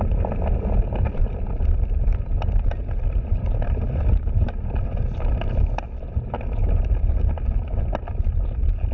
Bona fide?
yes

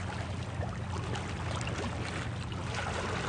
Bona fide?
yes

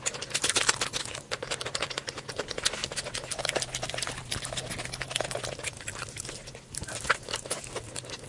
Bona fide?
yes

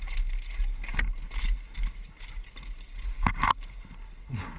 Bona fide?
yes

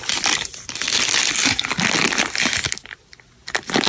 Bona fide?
yes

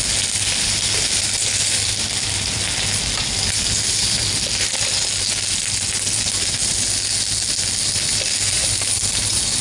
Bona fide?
yes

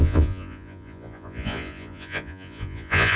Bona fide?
no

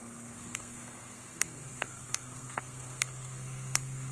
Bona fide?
no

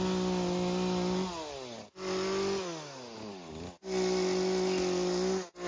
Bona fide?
yes